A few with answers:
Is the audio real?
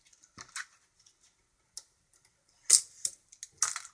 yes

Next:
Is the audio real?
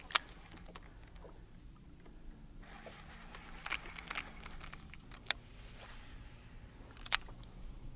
yes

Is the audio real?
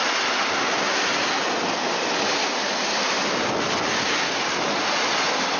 yes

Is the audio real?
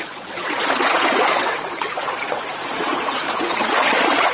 no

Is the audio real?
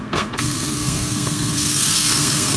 no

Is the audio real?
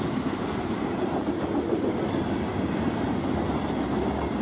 yes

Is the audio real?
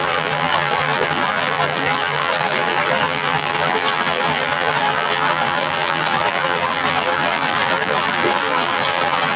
no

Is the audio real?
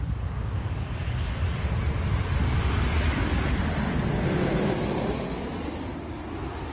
yes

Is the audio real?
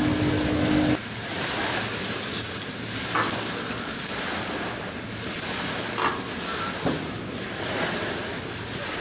yes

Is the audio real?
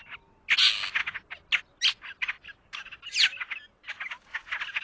yes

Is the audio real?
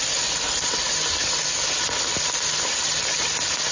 yes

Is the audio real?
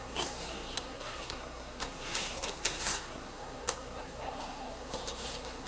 no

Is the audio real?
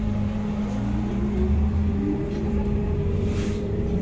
no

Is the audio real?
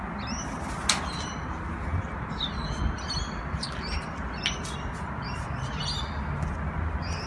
yes